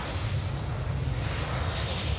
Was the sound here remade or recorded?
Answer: recorded